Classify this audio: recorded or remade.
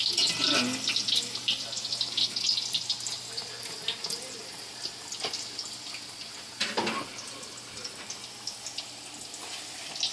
recorded